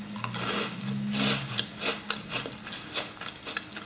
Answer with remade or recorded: recorded